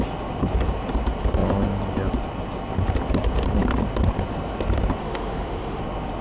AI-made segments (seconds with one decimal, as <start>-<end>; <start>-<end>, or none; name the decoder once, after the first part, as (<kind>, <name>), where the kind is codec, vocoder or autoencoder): 5.0-5.8 (autoencoder, DAC-VAE)